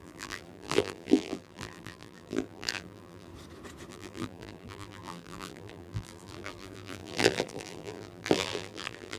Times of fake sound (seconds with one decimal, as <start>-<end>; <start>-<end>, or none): 0.0-3.3; 3.9-9.2